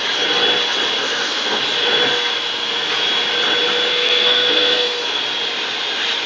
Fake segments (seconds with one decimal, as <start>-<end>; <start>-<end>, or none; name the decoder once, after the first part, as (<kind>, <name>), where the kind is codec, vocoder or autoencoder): 1.0-1.6 (codec, SNAC); 2.1-2.9; 3.9-5.2